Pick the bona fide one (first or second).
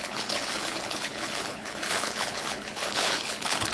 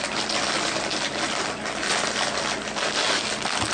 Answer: second